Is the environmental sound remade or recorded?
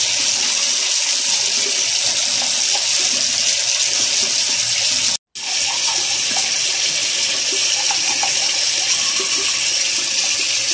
recorded